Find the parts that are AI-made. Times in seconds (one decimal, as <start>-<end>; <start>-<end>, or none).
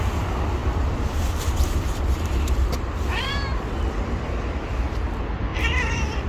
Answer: 0.6-3.3; 5.5-6.3